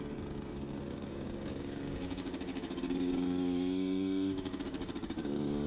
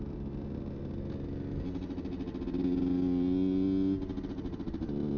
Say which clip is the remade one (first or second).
first